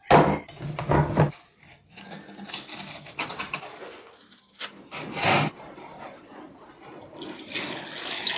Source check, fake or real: real